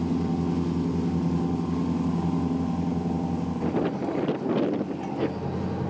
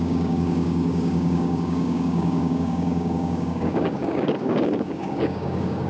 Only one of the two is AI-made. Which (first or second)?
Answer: second